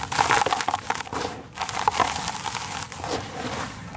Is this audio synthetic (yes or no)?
no